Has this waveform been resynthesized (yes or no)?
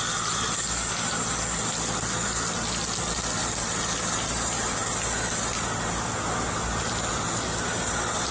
no